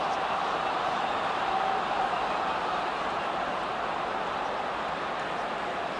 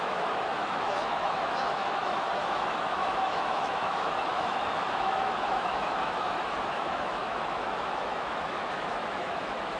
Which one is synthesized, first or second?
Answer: second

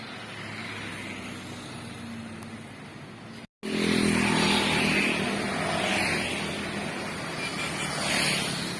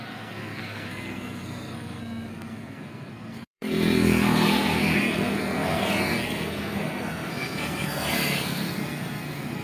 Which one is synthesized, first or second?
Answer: second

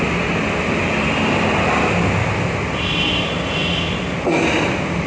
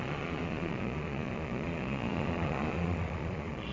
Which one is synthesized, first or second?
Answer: second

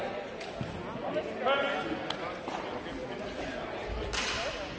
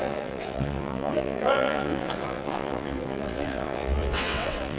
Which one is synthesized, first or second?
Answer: second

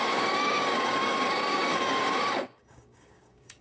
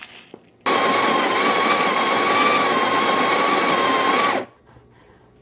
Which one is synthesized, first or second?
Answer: first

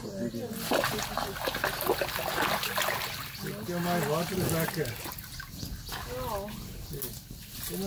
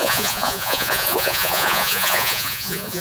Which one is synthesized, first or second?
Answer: second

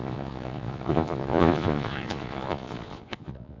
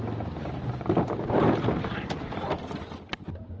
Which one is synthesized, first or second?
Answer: first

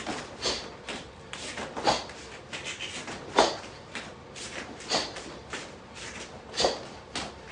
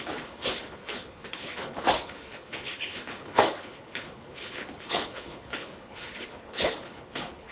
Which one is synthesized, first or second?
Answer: second